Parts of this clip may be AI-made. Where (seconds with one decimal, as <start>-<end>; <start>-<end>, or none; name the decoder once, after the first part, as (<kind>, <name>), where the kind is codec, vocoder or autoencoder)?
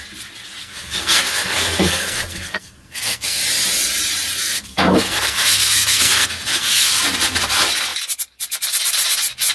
0.6-3.4 (codec, SNAC); 4.4-6.9